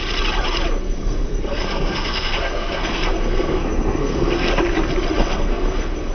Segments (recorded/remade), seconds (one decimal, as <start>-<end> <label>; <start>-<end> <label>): 0.0-0.8 recorded; 0.8-4.5 remade; 4.5-5.2 recorded; 5.2-6.1 remade